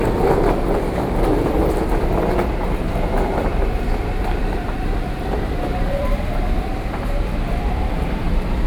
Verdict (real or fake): fake